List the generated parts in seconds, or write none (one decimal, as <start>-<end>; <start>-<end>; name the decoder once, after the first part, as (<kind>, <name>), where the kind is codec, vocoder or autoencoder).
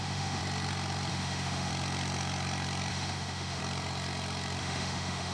0.0-0.4 (autoencoder, DAC-VAE); 1.1-1.7; 2.9-3.6; 4.6-5.3